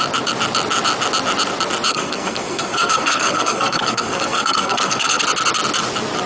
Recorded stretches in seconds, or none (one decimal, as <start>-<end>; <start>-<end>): 0.0-1.9; 5.2-6.3